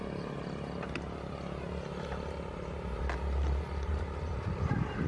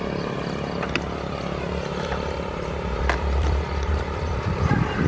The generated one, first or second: second